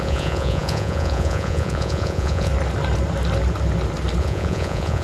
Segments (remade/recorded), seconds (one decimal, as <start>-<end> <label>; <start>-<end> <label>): 0.0-2.5 remade; 2.5-4.2 recorded; 4.2-5.0 remade